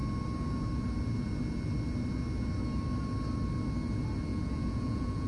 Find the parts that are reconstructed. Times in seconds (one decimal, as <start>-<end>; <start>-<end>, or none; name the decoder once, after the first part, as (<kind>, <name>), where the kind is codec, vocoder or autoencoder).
4.3-5.3 (vocoder, Vocos)